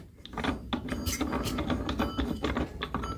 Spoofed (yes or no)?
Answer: no